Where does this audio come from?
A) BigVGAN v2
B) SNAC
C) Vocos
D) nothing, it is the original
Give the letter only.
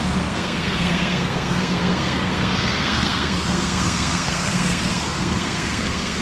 B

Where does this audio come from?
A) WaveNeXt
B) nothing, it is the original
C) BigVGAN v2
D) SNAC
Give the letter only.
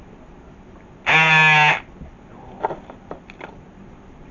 B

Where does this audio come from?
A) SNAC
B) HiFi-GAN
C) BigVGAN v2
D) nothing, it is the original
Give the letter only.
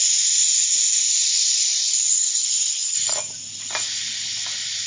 D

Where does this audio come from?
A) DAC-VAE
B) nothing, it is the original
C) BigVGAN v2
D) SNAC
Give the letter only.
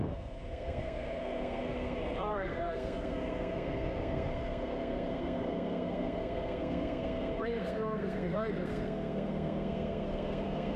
D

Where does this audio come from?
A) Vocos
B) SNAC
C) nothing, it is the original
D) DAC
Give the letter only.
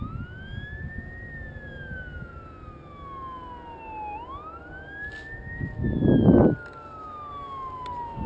C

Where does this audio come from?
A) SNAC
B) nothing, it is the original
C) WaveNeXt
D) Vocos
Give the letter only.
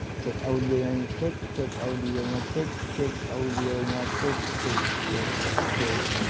B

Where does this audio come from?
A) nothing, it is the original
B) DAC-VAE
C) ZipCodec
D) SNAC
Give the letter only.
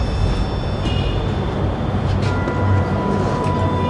A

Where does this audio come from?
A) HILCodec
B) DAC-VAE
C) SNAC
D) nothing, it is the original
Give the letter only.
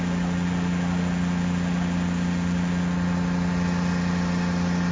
D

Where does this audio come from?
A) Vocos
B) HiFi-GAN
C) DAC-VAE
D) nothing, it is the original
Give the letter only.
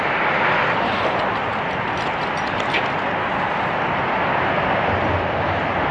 D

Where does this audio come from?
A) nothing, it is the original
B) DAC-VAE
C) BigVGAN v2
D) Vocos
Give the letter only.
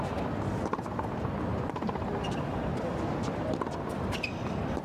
A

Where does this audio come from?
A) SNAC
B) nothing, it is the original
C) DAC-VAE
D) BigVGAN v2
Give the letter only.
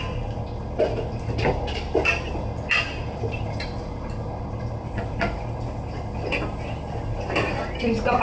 B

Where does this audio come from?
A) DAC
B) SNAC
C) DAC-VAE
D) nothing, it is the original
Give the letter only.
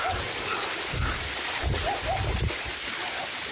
D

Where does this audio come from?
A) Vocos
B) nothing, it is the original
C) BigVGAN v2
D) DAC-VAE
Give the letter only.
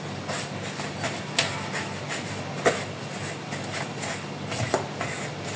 B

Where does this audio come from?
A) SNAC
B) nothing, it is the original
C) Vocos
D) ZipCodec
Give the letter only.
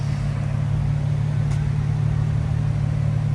B